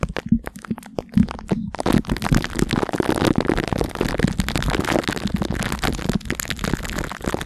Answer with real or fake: real